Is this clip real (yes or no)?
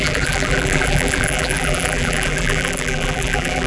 no